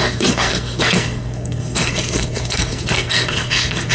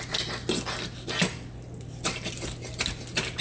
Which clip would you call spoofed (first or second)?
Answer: first